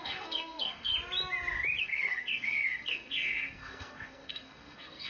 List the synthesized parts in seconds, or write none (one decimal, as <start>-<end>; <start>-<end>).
0.0-0.9; 1.8-5.1